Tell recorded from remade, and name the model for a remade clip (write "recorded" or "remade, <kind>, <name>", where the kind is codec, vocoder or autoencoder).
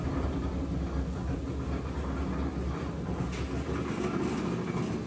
recorded